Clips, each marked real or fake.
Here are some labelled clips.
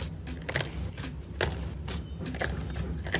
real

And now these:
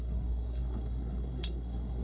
fake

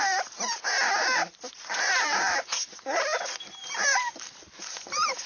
fake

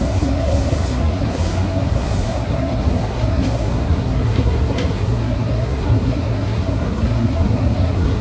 fake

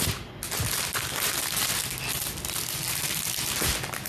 real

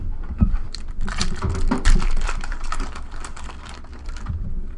fake